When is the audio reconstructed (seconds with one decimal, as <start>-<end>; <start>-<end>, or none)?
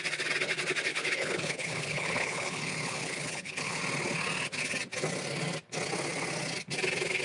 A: 0.9-3.8